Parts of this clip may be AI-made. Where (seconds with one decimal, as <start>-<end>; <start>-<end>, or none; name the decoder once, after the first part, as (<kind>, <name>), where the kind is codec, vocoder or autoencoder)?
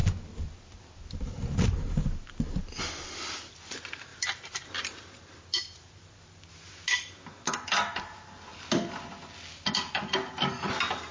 none